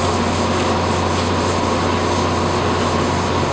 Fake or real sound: real